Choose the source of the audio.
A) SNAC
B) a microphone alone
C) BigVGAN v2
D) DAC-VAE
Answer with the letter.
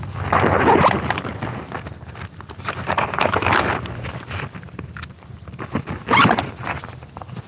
B